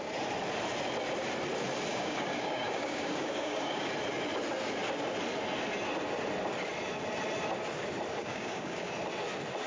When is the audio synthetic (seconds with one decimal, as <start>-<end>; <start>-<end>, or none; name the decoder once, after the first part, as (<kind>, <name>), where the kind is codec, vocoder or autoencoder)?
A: 1.9-3.9 (codec, DAC); 8.2-8.9